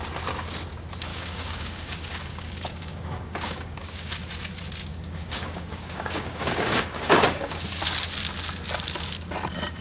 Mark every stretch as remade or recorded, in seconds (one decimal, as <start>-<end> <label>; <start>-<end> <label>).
0.0-1.1 recorded; 1.1-4.1 remade; 4.1-4.9 recorded; 4.9-7.8 remade; 7.8-9.8 recorded